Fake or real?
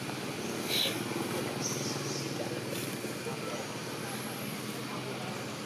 real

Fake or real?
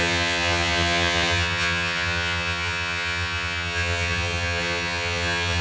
fake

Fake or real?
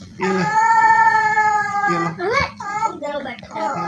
fake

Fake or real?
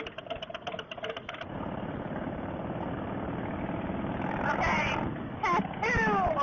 real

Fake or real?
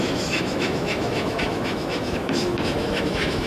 fake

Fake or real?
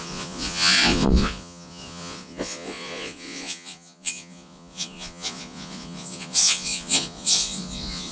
fake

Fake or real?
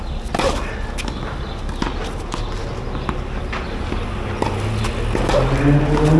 real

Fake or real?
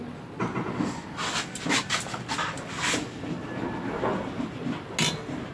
real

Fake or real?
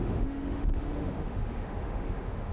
fake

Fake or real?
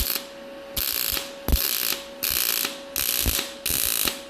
real